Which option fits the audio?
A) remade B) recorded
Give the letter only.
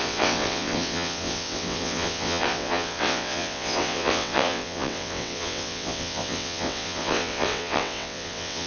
A